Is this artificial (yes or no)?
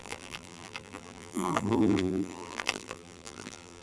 yes